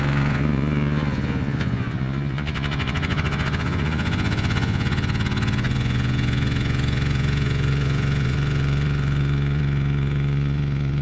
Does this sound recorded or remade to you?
remade